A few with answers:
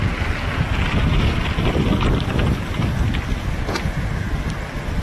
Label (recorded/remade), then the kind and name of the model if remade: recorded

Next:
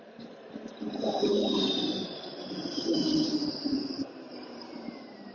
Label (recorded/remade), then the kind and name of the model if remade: remade, vocoder, BigVGAN v2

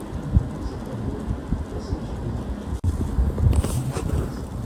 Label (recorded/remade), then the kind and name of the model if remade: recorded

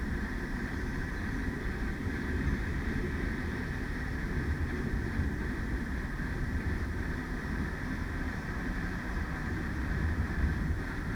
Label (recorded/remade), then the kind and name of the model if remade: remade, vocoder, BigVGAN v2